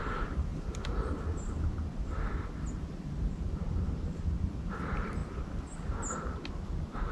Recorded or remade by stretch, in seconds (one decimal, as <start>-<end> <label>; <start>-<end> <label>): 0.0-0.5 recorded; 0.5-1.1 remade; 1.1-7.1 recorded